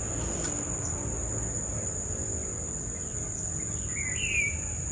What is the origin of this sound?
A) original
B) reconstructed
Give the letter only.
A